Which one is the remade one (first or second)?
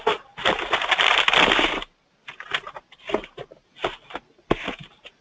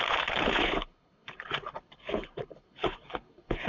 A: second